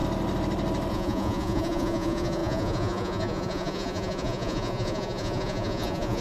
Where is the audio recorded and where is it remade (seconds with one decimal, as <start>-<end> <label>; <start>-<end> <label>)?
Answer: 0.0-0.9 recorded; 0.9-6.2 remade

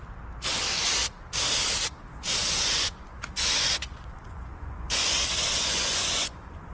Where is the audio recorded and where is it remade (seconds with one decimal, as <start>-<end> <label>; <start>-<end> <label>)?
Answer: 0.0-2.4 recorded; 2.4-6.7 remade

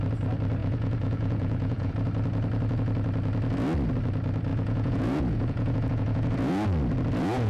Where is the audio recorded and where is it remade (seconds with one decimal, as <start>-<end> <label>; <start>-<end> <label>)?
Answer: 0.0-0.6 recorded; 0.6-1.9 remade; 1.9-4.5 recorded; 4.5-6.5 remade; 6.5-7.5 recorded

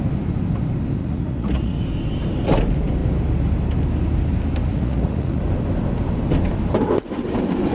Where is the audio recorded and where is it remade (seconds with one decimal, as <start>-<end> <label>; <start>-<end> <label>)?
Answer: 0.0-1.0 recorded; 1.0-1.8 remade; 1.8-4.7 recorded; 4.7-5.4 remade; 5.4-7.7 recorded

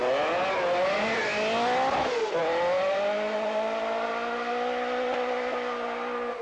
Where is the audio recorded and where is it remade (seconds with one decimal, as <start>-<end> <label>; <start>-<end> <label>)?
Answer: 0.0-6.4 recorded

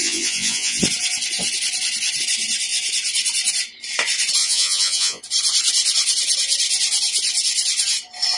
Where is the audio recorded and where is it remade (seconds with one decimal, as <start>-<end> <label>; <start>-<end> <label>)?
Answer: 0.0-0.8 remade; 0.8-4.4 recorded; 4.4-5.2 remade; 5.2-8.4 recorded

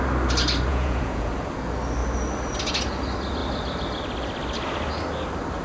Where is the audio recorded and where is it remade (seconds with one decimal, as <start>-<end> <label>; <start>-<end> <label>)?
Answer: 0.0-0.7 recorded; 0.7-1.3 remade; 1.3-5.6 recorded